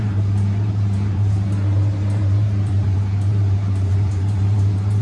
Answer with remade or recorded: remade